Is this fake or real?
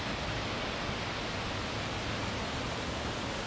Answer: real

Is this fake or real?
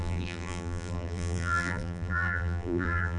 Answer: fake